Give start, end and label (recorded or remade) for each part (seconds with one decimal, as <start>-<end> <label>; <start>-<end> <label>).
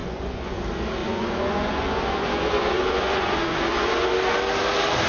0.0-0.6 remade; 0.6-1.0 recorded; 1.0-4.1 remade; 4.1-5.1 recorded